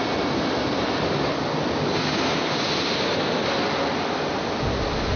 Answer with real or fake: real